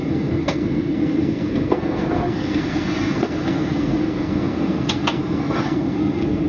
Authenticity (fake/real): fake